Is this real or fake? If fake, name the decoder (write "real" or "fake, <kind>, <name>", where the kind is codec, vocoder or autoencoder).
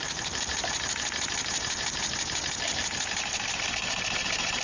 real